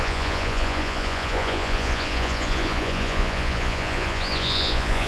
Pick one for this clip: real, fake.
fake